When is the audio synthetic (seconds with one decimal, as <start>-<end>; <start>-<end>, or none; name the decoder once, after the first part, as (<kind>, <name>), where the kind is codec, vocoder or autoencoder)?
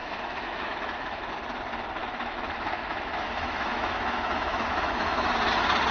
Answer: 0.0-1.3 (autoencoder, DAC-VAE); 2.0-5.5